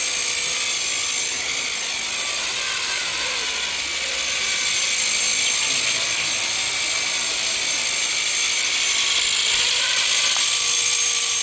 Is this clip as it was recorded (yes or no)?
yes